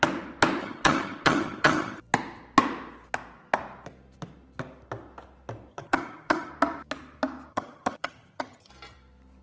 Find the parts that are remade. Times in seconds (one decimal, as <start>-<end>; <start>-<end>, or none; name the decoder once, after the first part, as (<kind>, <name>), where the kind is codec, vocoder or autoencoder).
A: 0.6-2.0 (vocoder, HiFi-GAN); 5.7-6.5; 7.5-8.7